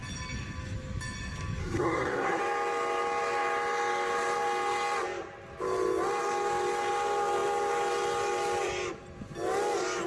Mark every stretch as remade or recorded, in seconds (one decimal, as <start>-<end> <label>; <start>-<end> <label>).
0.0-1.6 recorded; 1.6-2.4 remade; 2.4-10.1 recorded